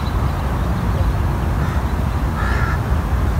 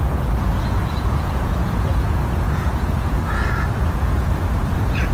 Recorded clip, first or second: first